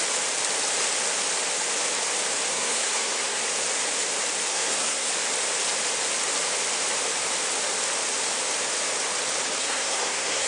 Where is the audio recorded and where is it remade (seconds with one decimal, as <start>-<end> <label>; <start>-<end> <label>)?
0.0-2.5 recorded; 2.5-3.4 remade; 3.4-4.5 recorded; 4.5-5.1 remade; 5.1-9.6 recorded; 9.6-10.5 remade